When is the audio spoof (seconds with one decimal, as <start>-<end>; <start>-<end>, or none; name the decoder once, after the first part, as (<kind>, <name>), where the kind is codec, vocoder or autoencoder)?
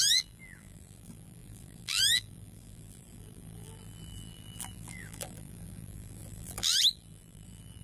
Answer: 0.0-7.8 (vocoder, BigVGAN v2)